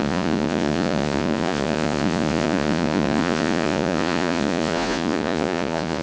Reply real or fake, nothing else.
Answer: fake